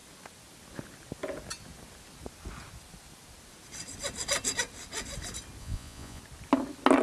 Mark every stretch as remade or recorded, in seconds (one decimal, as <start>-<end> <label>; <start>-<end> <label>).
0.0-5.6 recorded; 5.6-6.2 remade; 6.2-7.0 recorded